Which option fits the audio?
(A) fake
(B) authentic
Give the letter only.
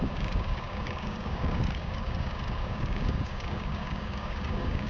A